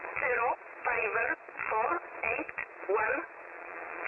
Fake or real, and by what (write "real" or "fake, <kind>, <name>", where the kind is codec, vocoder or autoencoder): fake, vocoder, Vocos